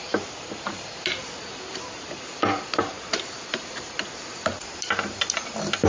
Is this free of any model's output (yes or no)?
no